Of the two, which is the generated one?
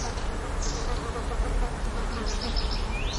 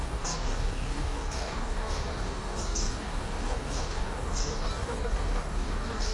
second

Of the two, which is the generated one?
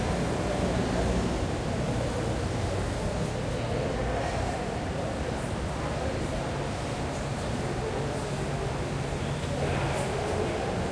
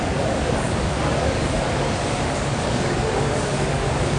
second